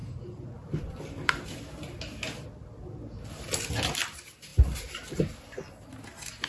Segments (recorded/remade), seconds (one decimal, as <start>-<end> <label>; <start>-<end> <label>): 0.0-6.5 recorded